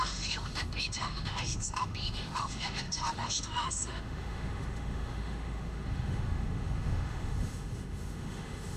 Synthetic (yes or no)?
yes